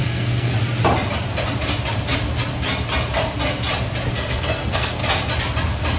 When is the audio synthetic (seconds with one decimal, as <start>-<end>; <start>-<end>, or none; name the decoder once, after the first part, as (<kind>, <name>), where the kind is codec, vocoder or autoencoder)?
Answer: 0.0-0.5 (codec, SNAC); 4.1-5.0